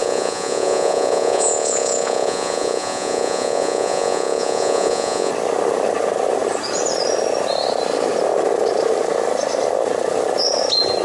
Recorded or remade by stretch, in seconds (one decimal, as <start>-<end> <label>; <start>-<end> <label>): 0.0-5.3 remade; 5.3-11.0 recorded